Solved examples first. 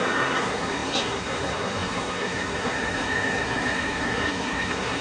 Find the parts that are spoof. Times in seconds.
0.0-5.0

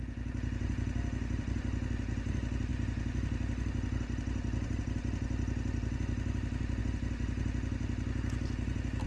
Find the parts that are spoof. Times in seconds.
none

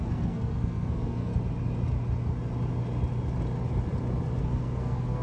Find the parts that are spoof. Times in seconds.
0.0-1.3; 4.4-5.2

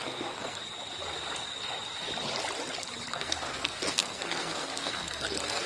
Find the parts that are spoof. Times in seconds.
0.0-0.6; 3.1-5.7

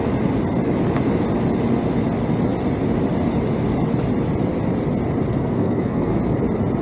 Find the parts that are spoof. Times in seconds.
5.4-6.2

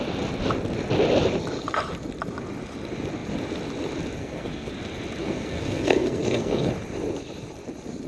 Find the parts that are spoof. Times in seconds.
4.2-4.7; 5.2-6.7